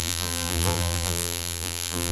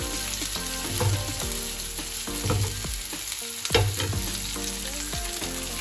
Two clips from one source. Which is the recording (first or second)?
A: second